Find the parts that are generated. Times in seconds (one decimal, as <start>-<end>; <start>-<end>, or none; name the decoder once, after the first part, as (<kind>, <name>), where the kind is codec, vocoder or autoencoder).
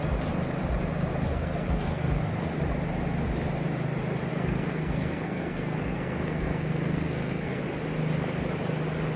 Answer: 1.3-2.3 (codec, SNAC); 4.3-7.6